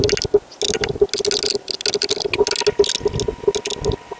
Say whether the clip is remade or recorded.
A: recorded